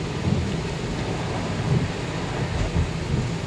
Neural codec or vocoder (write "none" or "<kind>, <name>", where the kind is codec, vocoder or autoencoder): none